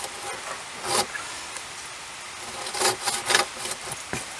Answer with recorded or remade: recorded